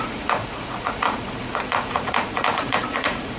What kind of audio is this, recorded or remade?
remade